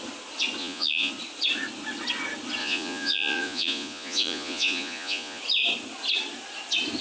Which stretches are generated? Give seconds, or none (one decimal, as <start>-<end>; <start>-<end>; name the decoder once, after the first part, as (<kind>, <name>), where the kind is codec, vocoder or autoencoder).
0.6-1.1 (vocoder, Vocos); 2.6-5.4